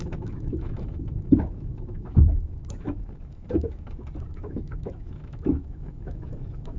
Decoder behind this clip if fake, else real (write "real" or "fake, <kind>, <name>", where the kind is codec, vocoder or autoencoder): fake, autoencoder, DAC-VAE